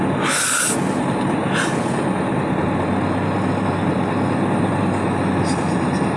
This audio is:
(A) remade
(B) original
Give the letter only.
B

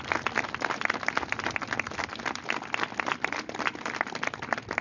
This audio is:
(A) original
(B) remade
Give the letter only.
A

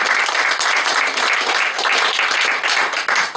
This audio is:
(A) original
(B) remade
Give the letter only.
A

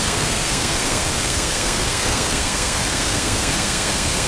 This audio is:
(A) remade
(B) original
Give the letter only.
A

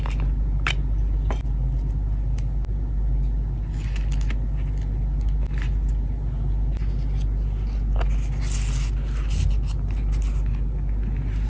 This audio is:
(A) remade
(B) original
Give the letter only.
B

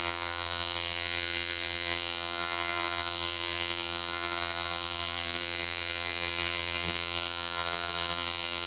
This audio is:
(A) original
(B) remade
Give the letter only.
B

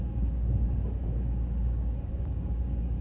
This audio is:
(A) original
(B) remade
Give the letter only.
B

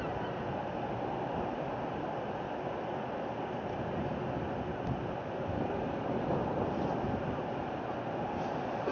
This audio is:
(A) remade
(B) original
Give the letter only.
B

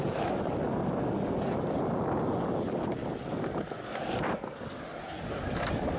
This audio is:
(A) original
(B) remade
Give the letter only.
A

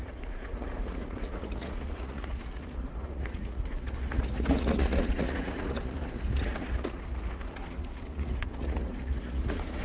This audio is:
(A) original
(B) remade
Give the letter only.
B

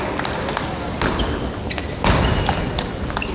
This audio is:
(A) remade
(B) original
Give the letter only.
B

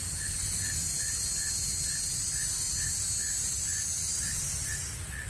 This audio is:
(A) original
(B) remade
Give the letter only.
A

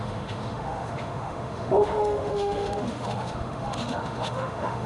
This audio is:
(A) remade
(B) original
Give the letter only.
A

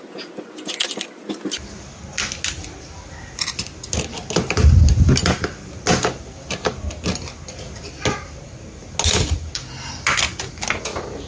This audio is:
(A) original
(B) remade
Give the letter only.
A